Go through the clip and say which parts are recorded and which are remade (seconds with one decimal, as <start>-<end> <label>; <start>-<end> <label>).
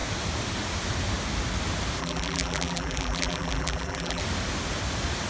0.0-2.0 recorded; 2.0-4.2 remade; 4.2-5.3 recorded